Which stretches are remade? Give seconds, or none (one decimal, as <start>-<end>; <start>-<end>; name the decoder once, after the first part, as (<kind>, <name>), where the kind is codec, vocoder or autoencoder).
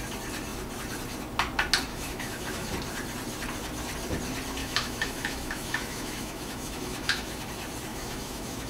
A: 1.9-2.7 (autoencoder, DAC-VAE); 4.6-7.5; 7.9-8.7